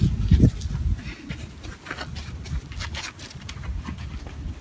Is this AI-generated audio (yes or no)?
no